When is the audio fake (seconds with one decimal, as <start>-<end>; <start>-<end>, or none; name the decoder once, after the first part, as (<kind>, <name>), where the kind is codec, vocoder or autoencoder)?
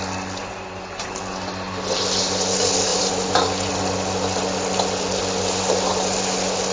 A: 0.4-1.2 (vocoder, BigVGAN v2); 2.9-3.7